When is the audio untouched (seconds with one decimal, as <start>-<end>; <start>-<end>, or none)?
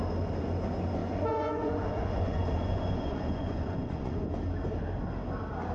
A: 0.0-1.0; 4.3-5.7